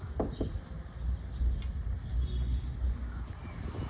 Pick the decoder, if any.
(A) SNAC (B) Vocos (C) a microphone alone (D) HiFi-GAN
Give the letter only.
C